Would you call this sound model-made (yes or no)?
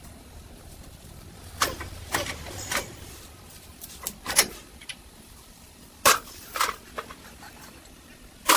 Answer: yes